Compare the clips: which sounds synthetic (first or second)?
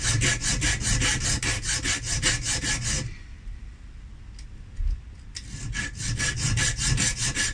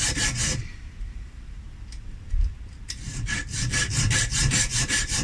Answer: second